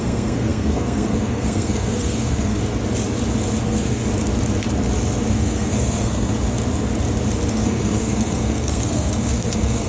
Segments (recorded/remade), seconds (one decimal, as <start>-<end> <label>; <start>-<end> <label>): 0.0-2.6 remade; 2.6-3.6 recorded; 3.6-4.0 remade; 4.0-5.3 recorded; 5.3-6.3 remade; 6.3-7.5 recorded; 7.5-9.9 remade